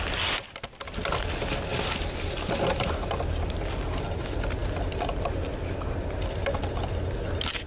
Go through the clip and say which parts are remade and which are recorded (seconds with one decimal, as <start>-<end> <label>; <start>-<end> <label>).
0.0-7.7 recorded